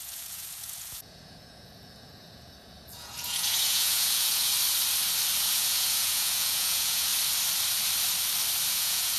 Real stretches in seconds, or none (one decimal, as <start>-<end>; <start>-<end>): 4.5-5.4; 7.1-8.7